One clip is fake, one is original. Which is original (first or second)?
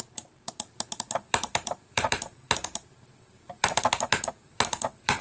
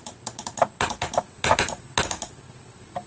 second